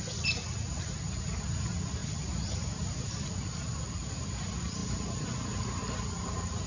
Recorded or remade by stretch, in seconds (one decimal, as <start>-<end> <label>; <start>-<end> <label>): 0.0-6.7 recorded